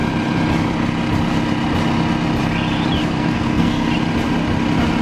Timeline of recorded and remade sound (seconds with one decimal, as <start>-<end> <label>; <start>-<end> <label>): 0.0-3.0 recorded; 3.0-3.9 remade; 3.9-5.0 recorded